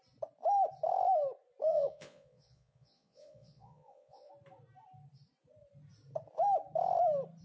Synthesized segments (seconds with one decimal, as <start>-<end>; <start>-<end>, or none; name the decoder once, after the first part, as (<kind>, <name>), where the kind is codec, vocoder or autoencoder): 1.7-4.3 (vocoder, Vocos)